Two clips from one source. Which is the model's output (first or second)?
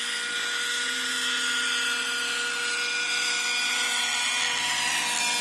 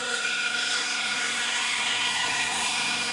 second